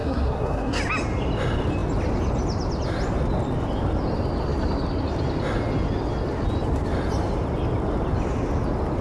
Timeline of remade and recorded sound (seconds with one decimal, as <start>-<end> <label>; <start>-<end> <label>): 0.0-0.8 remade; 0.8-9.0 recorded